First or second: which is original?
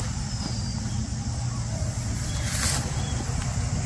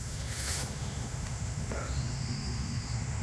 first